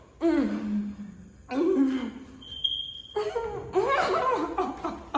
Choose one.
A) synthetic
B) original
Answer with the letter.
B